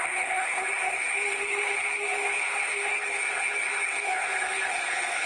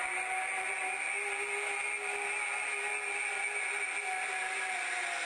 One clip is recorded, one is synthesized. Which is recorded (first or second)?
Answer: second